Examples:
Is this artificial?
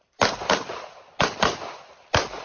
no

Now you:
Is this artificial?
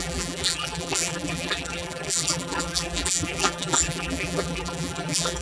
yes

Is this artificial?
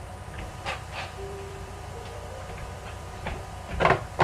yes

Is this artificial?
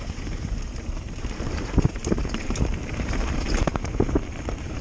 yes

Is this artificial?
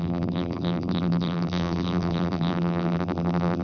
yes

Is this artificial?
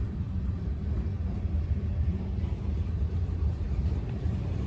yes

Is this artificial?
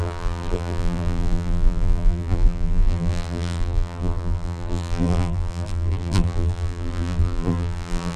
yes